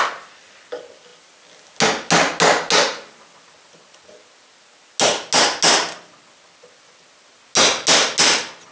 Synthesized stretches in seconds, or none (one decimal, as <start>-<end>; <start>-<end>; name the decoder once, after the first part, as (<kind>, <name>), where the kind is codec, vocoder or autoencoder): none

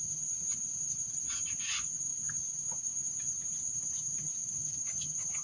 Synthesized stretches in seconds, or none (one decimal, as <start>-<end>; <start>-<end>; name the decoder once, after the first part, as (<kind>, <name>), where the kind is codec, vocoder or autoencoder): 0.0-5.4 (vocoder, HiFi-GAN)

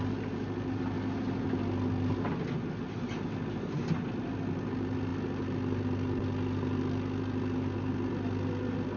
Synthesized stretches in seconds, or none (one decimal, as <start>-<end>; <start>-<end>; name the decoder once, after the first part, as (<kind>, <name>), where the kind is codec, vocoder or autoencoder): none

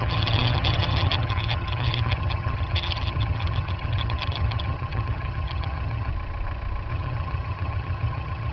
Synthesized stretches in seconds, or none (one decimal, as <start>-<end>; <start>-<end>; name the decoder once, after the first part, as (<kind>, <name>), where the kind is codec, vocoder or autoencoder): 0.0-6.1 (vocoder, HiFi-GAN); 6.9-8.5

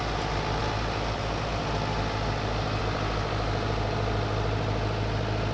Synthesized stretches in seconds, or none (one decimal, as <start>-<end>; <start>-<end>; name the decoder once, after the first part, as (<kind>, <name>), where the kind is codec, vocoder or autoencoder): none

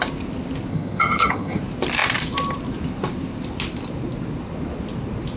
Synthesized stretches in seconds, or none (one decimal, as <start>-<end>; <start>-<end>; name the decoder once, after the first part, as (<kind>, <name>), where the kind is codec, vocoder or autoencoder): 0.7-1.6 (vocoder, HiFi-GAN)

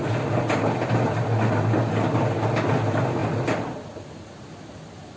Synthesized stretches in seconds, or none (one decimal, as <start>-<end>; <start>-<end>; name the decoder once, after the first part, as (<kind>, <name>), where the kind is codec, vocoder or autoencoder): none